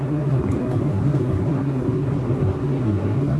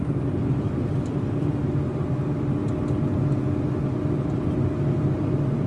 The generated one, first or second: first